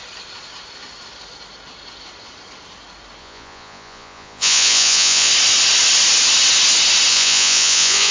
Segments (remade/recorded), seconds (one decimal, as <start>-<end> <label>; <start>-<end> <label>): 0.0-3.2 recorded; 3.2-5.3 remade; 5.3-7.1 recorded; 7.1-8.1 remade